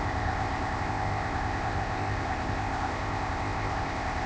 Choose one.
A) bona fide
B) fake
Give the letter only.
B